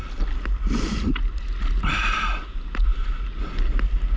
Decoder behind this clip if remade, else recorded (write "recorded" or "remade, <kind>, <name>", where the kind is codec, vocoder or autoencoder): recorded